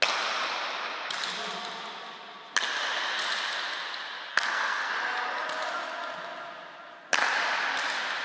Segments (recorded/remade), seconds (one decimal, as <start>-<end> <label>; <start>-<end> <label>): 0.0-4.3 recorded; 4.3-4.9 remade; 4.9-8.2 recorded

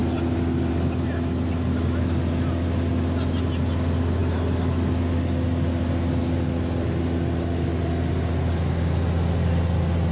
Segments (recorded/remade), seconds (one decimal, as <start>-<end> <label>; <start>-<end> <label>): 0.0-10.1 recorded

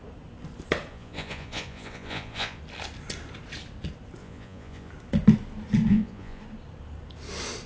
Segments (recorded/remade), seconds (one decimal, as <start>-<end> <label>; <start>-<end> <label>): 0.0-0.9 recorded; 0.9-2.6 remade; 2.6-4.2 recorded; 4.2-4.9 remade; 4.9-5.9 recorded; 5.9-6.4 remade; 6.4-7.7 recorded

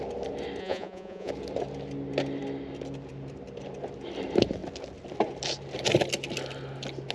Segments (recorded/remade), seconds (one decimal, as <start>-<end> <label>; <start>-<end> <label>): 0.0-0.6 recorded; 0.6-1.3 remade; 1.3-7.1 recorded

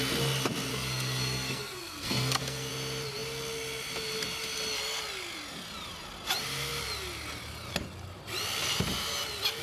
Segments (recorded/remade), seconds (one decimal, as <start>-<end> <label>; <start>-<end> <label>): 0.0-0.7 recorded; 0.7-2.7 remade; 2.7-9.6 recorded

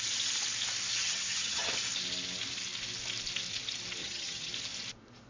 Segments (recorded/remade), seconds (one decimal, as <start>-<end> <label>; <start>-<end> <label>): 0.0-1.0 recorded; 1.0-1.7 remade; 1.7-4.0 recorded; 4.0-4.5 remade; 4.5-5.3 recorded

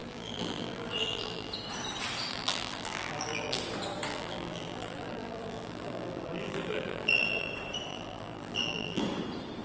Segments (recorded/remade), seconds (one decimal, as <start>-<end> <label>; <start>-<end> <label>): 0.0-1.5 remade; 1.5-2.3 recorded; 2.3-3.6 remade; 3.6-4.1 recorded; 4.1-7.5 remade; 7.5-7.9 recorded; 7.9-9.0 remade; 9.0-9.6 recorded

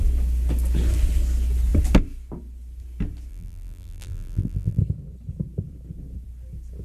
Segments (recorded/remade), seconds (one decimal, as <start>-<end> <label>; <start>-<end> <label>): 0.0-3.3 recorded; 3.3-4.8 remade; 4.8-6.8 recorded